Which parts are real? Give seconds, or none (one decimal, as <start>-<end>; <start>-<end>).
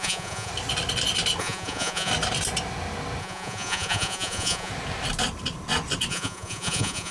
0.5-1.4; 2.1-3.2; 4.7-6.1